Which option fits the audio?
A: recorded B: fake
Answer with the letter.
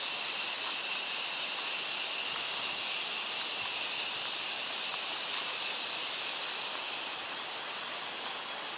A